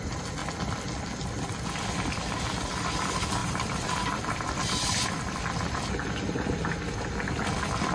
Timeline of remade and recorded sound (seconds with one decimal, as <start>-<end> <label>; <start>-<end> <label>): 0.0-3.4 recorded; 3.4-6.2 remade; 6.2-7.9 recorded